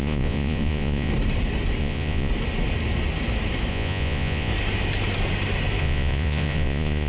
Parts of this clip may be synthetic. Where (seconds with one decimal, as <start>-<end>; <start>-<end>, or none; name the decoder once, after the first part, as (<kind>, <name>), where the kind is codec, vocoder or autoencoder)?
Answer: 0.0-1.1 (vocoder, Vocos); 1.8-2.3; 3.7-4.5; 5.8-7.1